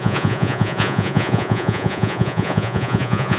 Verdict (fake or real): fake